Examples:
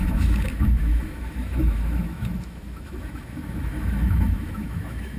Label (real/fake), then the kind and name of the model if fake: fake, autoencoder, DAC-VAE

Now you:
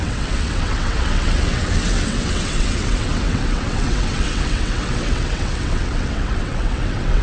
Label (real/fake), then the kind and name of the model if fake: fake, vocoder, WaveNeXt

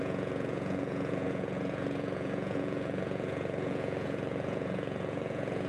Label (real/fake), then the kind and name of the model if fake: fake, vocoder, Vocos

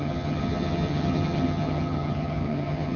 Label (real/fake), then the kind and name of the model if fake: fake, vocoder, HiFi-GAN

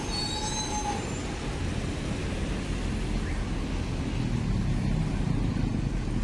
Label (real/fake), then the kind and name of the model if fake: real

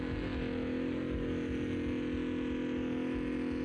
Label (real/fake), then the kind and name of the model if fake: real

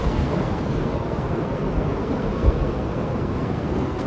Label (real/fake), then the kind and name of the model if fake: fake, codec, SNAC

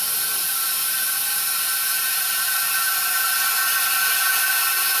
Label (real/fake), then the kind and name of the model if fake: real